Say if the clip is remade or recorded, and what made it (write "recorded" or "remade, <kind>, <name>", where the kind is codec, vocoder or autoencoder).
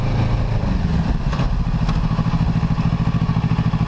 recorded